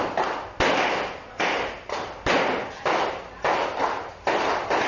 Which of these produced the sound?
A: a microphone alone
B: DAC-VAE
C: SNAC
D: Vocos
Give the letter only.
A